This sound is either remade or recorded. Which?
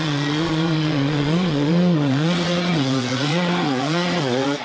remade